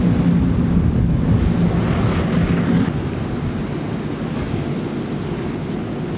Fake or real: real